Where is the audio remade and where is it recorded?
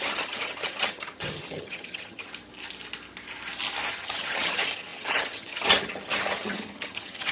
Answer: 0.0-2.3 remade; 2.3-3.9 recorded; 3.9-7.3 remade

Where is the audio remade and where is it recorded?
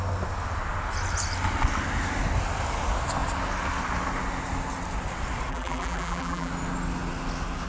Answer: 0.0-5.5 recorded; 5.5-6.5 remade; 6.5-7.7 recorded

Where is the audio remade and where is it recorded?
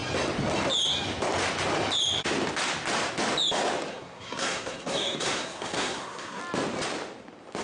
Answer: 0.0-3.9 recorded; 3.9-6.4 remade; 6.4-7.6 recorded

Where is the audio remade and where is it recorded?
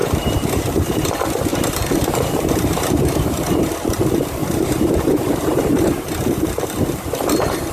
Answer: 0.0-1.1 remade; 1.1-1.5 recorded; 1.5-3.7 remade; 3.7-4.4 recorded; 4.4-6.6 remade; 6.6-7.7 recorded